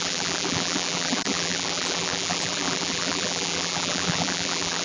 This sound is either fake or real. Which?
fake